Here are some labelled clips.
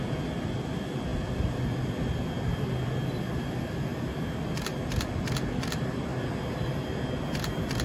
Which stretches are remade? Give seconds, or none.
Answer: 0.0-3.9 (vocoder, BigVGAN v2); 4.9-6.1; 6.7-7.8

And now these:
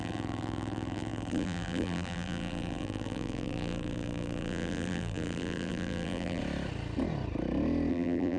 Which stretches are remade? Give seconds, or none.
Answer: 0.0-6.4 (vocoder, BigVGAN v2); 7.9-8.4

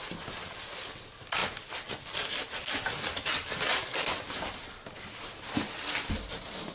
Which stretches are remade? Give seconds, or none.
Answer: 0.0-6.7 (vocoder, BigVGAN v2)

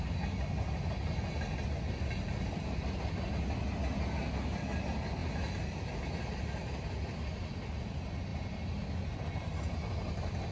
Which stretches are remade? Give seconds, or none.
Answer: 8.3-9.7 (vocoder, BigVGAN v2)

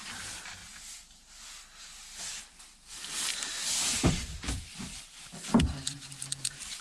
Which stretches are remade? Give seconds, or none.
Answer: 0.0-0.6 (vocoder, BigVGAN v2); 4.1-6.8